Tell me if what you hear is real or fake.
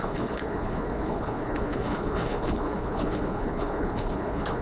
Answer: fake